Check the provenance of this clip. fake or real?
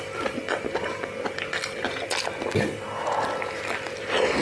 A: real